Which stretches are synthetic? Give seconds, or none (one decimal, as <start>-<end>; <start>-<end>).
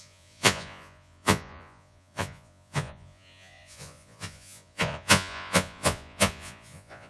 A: 0.0-7.1